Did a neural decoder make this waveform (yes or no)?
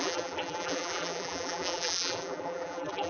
yes